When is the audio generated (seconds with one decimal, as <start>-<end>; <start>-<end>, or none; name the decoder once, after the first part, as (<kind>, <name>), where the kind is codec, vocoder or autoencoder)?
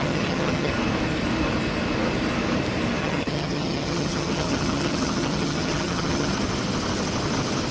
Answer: 0.0-0.7 (vocoder, HiFi-GAN); 3.0-6.3